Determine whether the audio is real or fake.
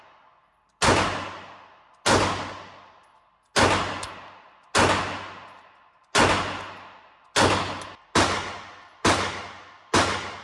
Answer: real